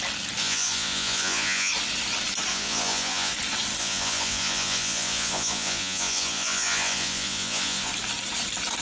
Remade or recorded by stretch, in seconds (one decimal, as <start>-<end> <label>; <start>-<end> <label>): 0.0-0.4 recorded; 0.4-1.7 remade; 1.7-2.5 recorded; 2.5-3.3 remade; 3.3-3.8 recorded; 3.8-7.9 remade; 7.9-8.8 recorded

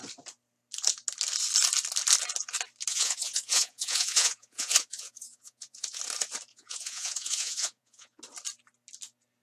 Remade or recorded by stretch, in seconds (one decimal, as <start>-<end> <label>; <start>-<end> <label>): 0.0-2.9 recorded; 2.9-6.0 remade; 6.0-6.5 recorded; 6.5-8.2 remade; 8.2-9.4 recorded

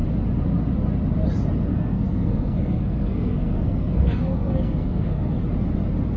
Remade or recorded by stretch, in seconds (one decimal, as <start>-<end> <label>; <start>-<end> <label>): 0.0-1.7 recorded; 1.7-5.4 remade; 5.4-6.2 recorded